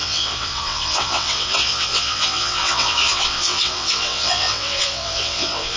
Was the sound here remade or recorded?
remade